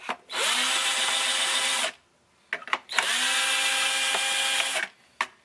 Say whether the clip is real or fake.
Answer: real